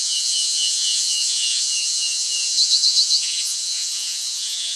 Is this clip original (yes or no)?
no